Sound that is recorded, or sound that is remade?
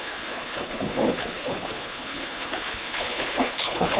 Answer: remade